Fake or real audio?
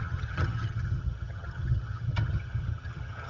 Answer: fake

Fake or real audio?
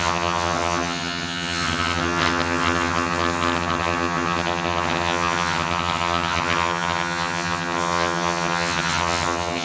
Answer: fake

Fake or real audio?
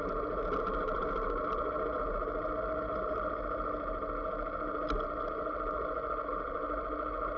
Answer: real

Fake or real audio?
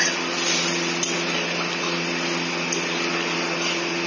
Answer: real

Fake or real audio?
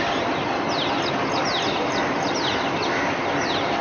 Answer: real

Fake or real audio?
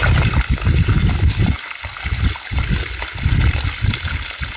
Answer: real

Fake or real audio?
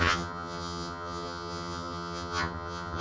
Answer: fake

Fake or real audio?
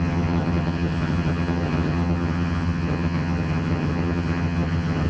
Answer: fake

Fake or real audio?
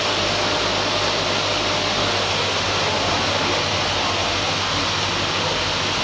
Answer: real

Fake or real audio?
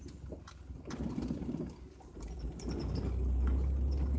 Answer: real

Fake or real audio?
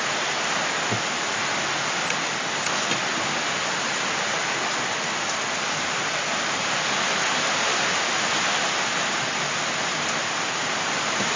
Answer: real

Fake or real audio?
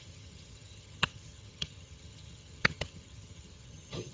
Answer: fake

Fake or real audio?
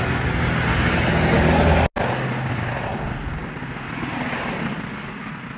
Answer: real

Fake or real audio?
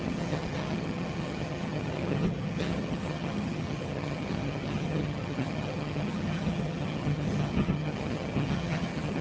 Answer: fake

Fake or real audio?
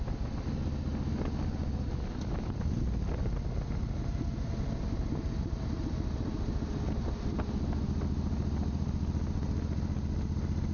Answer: real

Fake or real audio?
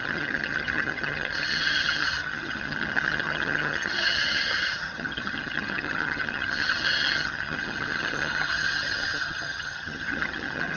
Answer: fake